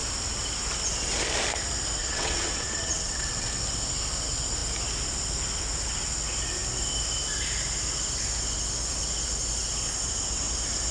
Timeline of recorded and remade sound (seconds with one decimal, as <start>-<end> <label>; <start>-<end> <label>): 0.0-2.0 recorded; 2.0-3.5 remade; 3.5-10.9 recorded